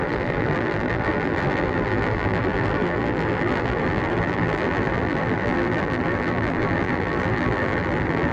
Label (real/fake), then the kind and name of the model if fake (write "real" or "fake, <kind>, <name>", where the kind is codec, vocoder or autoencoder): fake, vocoder, BigVGAN v2